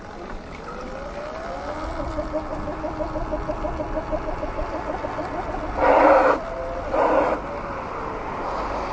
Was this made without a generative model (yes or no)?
yes